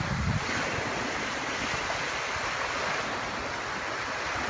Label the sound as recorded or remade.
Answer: recorded